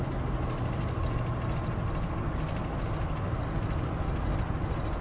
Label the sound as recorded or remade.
recorded